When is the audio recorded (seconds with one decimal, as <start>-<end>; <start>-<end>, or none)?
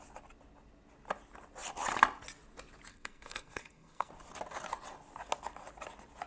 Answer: 0.0-2.9; 4.1-6.3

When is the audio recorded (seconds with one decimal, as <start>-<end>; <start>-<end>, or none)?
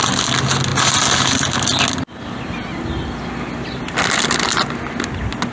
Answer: 0.0-5.5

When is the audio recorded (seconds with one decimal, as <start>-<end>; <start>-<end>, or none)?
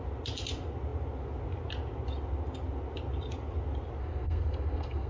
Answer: 0.0-4.0